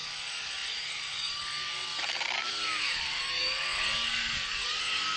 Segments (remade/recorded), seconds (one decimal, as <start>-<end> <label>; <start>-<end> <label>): 0.0-1.9 remade; 1.9-2.8 recorded; 2.8-5.2 remade